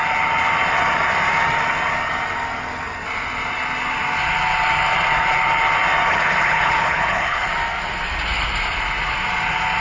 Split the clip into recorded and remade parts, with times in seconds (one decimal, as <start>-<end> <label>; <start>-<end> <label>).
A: 0.0-6.1 recorded; 6.1-7.5 remade; 7.5-9.8 recorded